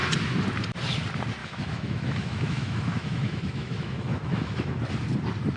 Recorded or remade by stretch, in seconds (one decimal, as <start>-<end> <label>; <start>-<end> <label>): 0.0-1.4 recorded; 1.4-4.8 remade; 4.8-5.6 recorded